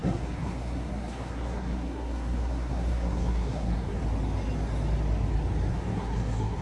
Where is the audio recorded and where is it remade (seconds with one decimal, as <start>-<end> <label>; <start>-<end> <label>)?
0.0-4.0 remade; 4.0-5.7 recorded; 5.7-6.6 remade